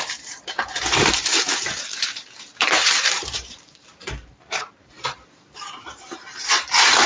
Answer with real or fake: fake